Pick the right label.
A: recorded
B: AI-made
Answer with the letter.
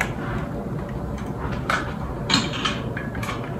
A